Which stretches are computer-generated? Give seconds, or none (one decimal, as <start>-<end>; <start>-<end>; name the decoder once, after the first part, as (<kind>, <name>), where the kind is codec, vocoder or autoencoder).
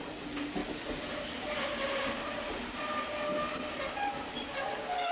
none